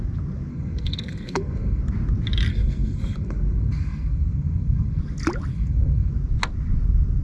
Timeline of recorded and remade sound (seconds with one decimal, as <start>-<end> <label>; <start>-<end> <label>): 0.0-0.5 recorded; 0.5-1.8 remade; 1.8-2.5 recorded; 2.5-5.0 remade; 5.0-5.5 recorded; 5.5-6.1 remade; 6.1-7.2 recorded